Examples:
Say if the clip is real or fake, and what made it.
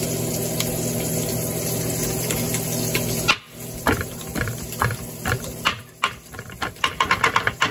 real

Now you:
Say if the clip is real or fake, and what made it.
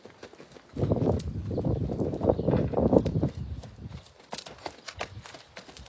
real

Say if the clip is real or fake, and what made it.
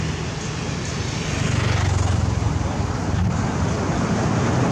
real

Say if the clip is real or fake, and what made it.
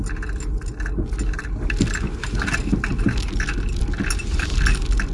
real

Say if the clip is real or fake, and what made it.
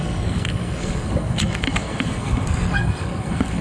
fake, codec, SNAC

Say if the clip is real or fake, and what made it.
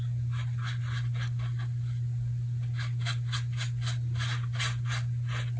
real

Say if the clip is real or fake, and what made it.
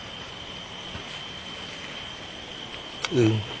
real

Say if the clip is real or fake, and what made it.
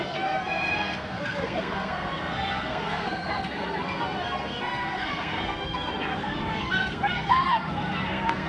fake, codec, SNAC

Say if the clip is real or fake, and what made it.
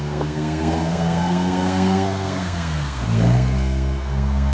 fake, codec, SNAC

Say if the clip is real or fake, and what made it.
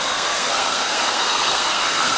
fake, codec, SNAC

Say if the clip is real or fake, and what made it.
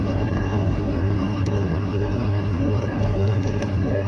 fake, codec, SNAC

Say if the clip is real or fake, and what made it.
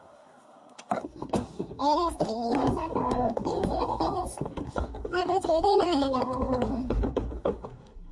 fake, codec, SNAC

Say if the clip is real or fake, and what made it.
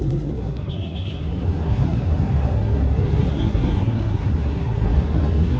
fake, codec, SNAC